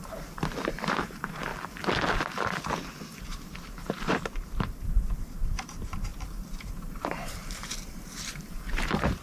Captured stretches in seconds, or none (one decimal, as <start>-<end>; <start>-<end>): 1.5-3.2; 6.1-6.8